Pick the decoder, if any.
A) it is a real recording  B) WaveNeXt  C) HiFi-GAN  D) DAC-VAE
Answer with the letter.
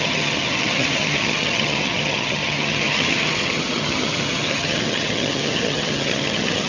C